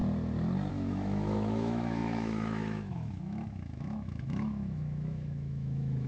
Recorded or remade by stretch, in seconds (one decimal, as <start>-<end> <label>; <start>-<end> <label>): 0.0-0.7 recorded; 0.7-6.1 remade